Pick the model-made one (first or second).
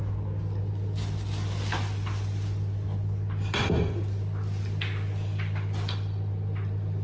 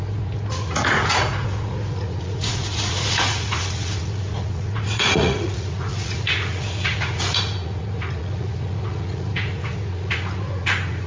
second